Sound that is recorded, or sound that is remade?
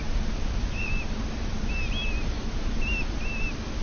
recorded